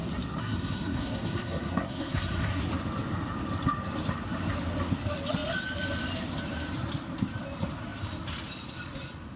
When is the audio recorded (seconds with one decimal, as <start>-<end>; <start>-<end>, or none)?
0.0-0.4; 2.6-9.4